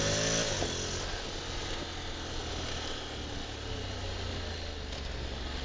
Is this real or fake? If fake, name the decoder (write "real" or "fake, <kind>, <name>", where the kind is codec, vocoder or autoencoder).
real